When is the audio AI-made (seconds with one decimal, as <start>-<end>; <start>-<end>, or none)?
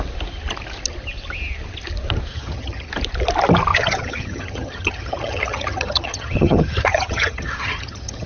2.3-2.9; 3.7-8.3